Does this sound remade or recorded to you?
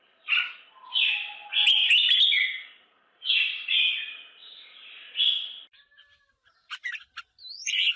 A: recorded